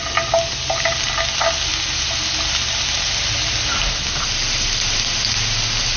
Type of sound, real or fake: real